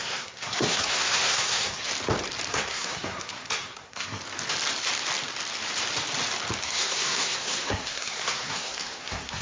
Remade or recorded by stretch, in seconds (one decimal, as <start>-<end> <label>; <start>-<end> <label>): 0.0-1.9 remade; 1.9-2.5 recorded; 2.5-4.2 remade; 4.2-6.6 recorded; 6.6-9.4 remade

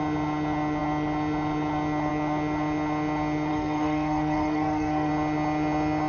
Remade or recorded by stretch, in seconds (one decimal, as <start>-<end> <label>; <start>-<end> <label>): 0.0-3.5 recorded; 3.5-5.1 remade; 5.1-6.1 recorded

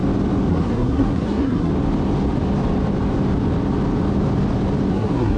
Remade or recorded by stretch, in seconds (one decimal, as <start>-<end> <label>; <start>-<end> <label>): 0.0-0.5 recorded; 0.5-1.7 remade; 1.7-4.9 recorded; 4.9-5.4 remade

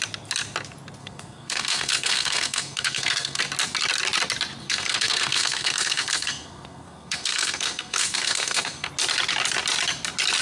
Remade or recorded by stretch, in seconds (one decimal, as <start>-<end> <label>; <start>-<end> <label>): 0.0-1.0 recorded; 1.0-3.4 remade; 3.4-4.6 recorded; 4.6-8.9 remade; 8.9-10.4 recorded